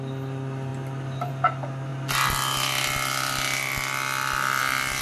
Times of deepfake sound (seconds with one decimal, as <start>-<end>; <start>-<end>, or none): none